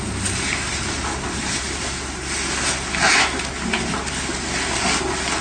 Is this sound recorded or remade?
recorded